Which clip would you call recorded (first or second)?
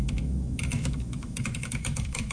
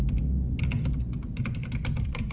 second